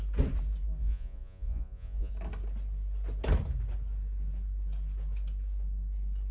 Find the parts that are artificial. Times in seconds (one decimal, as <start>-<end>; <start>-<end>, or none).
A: 0.8-2.1